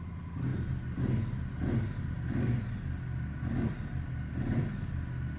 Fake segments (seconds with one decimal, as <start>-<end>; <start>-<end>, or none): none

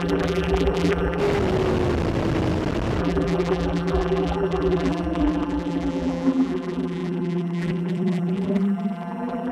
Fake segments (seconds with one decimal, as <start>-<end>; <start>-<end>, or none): 0.0-1.2; 3.0-9.5

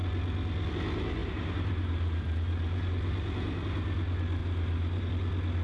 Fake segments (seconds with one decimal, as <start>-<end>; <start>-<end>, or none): 1.2-2.9; 4.4-5.1